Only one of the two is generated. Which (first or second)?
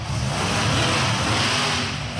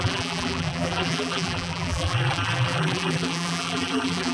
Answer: second